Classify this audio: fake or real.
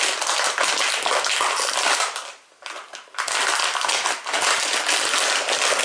real